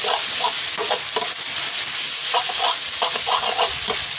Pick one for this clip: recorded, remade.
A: recorded